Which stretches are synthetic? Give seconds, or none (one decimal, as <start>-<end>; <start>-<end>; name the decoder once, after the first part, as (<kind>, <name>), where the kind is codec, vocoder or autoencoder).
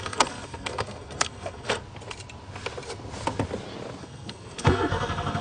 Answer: 0.0-1.8 (codec, SNAC); 4.0-5.4